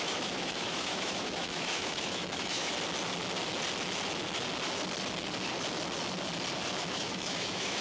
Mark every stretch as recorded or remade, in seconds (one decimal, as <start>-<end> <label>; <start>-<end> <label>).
0.0-2.7 remade; 2.7-6.9 recorded; 6.9-7.8 remade